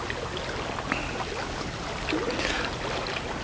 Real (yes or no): yes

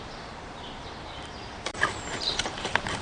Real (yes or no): no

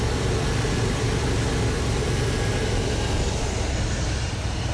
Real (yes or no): yes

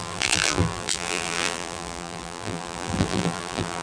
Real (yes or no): no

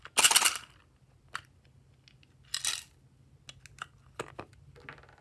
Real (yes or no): yes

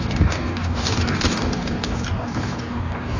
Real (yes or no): no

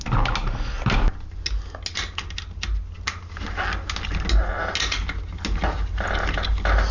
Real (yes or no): yes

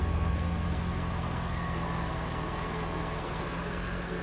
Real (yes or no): no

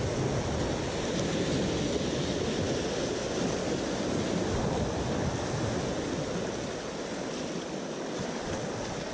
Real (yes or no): yes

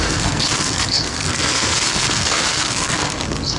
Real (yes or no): no